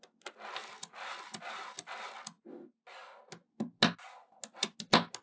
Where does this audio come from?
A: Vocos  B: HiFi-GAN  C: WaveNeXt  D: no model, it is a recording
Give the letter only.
D